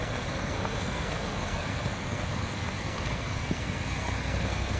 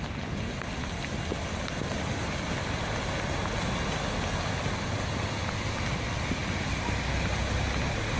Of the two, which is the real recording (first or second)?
second